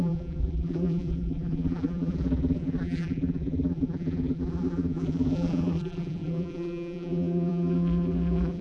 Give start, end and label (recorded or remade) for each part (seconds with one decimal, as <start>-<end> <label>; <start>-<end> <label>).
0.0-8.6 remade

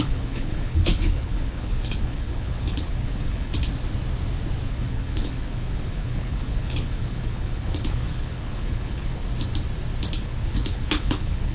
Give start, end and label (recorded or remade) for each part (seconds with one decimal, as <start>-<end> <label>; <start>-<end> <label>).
0.0-3.5 remade; 3.5-4.7 recorded; 4.7-9.2 remade; 9.2-10.0 recorded; 10.0-11.5 remade

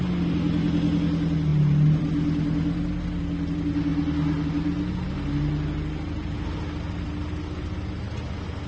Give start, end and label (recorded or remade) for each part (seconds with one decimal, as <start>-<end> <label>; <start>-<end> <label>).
0.0-8.7 recorded

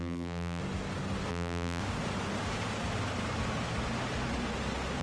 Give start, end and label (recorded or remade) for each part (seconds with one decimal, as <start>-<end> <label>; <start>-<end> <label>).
0.0-0.6 remade; 0.6-1.3 recorded; 1.3-1.8 remade; 1.8-5.0 recorded

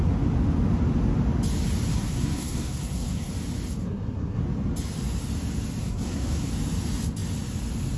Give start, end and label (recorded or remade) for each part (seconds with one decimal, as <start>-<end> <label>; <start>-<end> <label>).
0.0-1.9 recorded; 1.9-3.3 remade; 3.3-3.8 recorded; 3.8-4.4 remade; 4.4-5.8 recorded; 5.8-6.5 remade; 6.5-8.0 recorded